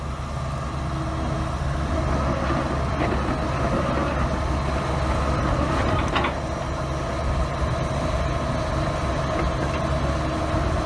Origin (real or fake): real